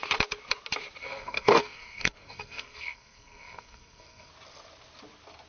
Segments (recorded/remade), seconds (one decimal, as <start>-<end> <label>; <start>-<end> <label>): 0.0-1.0 recorded; 1.0-4.3 remade; 4.3-5.5 recorded